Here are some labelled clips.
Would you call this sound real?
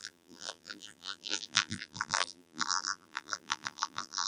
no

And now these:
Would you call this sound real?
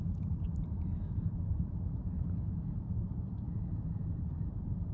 no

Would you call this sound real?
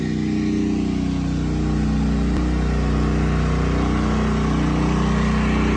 yes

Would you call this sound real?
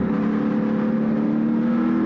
yes